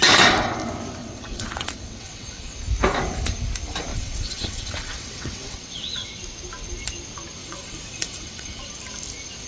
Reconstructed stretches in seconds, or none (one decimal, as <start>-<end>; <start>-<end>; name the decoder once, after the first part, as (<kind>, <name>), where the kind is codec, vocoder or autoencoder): 1.0-2.6 (vocoder, WaveNeXt); 3.9-6.2; 7.4-8.7